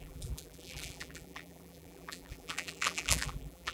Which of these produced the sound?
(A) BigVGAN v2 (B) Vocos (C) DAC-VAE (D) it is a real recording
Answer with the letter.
A